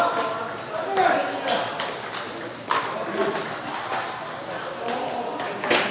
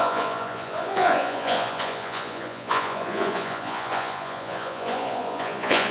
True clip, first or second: first